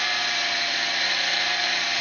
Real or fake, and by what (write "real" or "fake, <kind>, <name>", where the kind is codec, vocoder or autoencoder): real